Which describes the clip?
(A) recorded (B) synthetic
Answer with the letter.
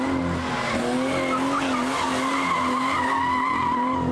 A